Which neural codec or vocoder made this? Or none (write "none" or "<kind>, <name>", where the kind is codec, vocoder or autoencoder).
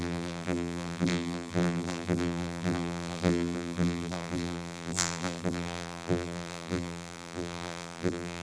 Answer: vocoder, BigVGAN v2